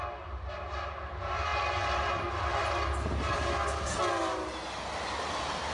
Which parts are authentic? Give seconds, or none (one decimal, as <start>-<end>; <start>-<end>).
0.0-5.7